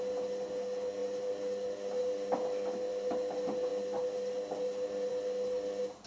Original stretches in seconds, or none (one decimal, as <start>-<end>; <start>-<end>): 0.0-6.1